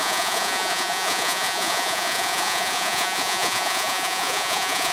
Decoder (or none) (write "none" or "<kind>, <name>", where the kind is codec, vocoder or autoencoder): vocoder, Vocos